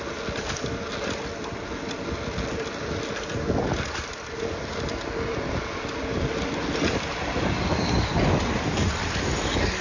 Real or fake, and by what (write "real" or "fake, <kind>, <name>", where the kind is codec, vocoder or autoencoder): real